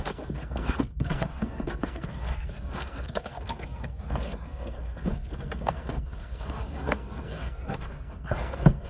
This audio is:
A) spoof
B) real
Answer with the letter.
A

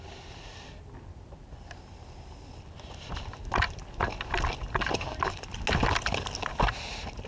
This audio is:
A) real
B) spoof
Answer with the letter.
A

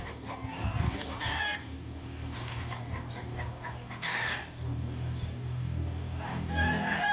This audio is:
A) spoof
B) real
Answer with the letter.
A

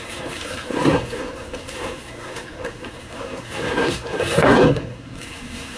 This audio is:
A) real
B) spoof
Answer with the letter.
B